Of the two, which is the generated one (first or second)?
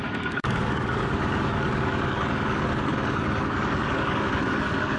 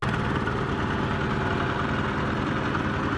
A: first